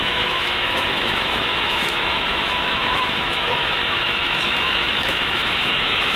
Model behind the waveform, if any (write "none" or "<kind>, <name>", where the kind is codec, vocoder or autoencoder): autoencoder, DAC-VAE